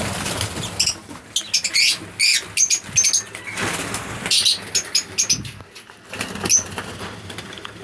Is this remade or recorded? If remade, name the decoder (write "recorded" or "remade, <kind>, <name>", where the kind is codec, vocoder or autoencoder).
recorded